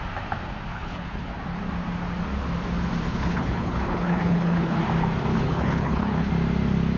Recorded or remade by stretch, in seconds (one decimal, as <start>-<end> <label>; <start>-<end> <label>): 0.0-0.7 recorded; 0.7-1.3 remade; 1.3-3.1 recorded; 3.1-4.8 remade; 4.8-5.3 recorded; 5.3-6.3 remade; 6.3-7.0 recorded

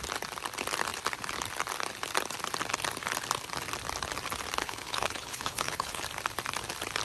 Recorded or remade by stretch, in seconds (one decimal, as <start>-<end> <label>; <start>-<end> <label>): 0.0-4.6 recorded; 4.6-6.0 remade; 6.0-7.0 recorded

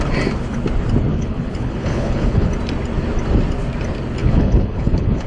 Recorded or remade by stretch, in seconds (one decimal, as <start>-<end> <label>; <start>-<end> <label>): 0.0-1.1 recorded; 1.1-2.5 remade; 2.5-4.2 recorded; 4.2-5.3 remade

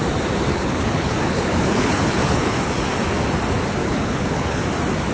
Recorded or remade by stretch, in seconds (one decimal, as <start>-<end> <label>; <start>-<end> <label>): 0.0-0.5 recorded; 0.5-2.8 remade; 2.8-3.8 recorded; 3.8-4.6 remade; 4.6-5.1 recorded